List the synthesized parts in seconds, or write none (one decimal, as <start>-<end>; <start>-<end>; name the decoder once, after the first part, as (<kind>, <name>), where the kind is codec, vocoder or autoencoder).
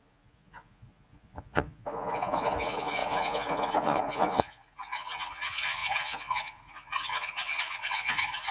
0.0-8.5 (vocoder, Vocos)